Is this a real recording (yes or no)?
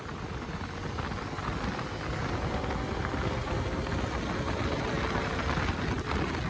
yes